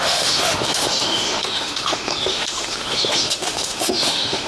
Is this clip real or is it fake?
fake